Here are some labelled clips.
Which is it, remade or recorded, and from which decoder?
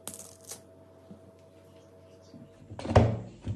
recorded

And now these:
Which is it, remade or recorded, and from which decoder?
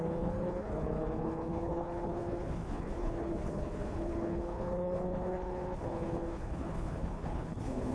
remade, codec, HILCodec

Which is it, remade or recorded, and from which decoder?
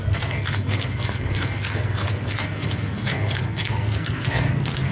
remade, codec, SNAC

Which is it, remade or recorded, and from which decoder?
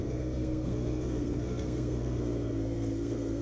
remade, codec, SNAC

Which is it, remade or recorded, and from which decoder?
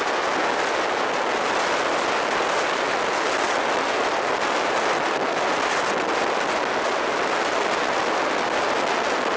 recorded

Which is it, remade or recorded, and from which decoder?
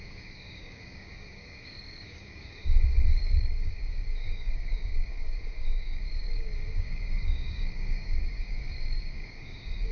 remade, codec, DAC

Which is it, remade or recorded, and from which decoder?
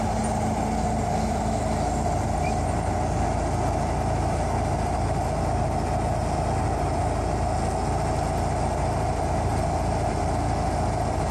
recorded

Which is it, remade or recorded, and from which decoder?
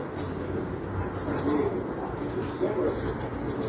recorded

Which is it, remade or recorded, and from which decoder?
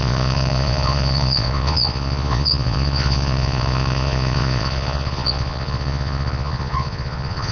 remade, vocoder, Vocos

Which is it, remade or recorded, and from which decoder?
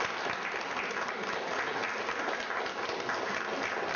recorded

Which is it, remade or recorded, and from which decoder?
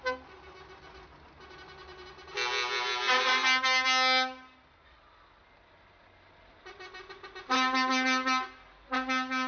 recorded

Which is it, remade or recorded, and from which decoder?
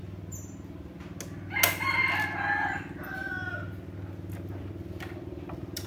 recorded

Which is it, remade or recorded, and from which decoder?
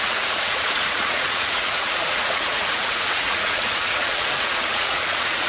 remade, vocoder, Vocos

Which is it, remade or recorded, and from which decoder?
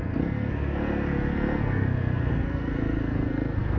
remade, codec, SNAC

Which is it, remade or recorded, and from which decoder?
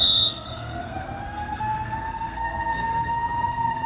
remade, codec, SNAC